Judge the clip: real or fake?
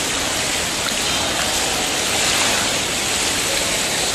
real